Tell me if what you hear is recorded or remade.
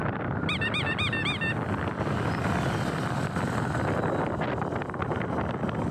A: recorded